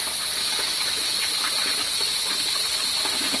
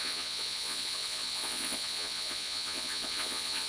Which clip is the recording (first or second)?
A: first